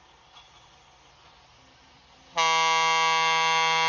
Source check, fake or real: real